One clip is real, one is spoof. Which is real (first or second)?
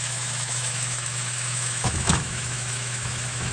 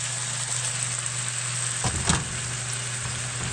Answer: second